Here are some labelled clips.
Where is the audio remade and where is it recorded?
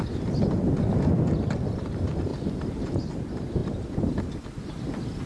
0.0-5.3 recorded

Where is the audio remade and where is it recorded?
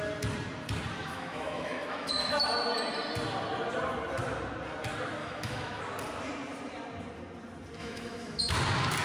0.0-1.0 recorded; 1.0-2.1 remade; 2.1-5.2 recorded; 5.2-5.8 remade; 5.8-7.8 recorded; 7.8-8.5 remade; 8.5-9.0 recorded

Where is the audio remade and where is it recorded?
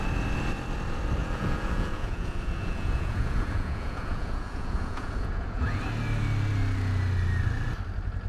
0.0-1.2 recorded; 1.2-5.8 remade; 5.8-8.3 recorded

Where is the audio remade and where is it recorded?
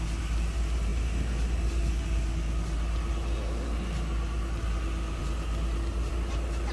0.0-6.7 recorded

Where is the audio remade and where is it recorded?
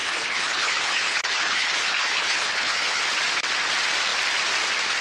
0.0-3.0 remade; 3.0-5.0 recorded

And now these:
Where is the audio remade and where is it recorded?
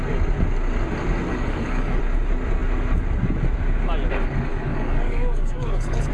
0.0-1.3 recorded; 1.3-2.0 remade; 2.0-4.5 recorded; 4.5-6.1 remade